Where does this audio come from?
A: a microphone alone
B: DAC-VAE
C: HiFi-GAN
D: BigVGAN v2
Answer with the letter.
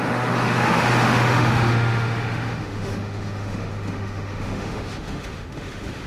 B